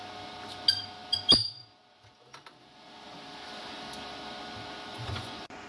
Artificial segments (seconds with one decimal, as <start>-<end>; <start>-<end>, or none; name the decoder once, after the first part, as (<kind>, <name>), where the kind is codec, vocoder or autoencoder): 4.9-5.7 (vocoder, Vocos)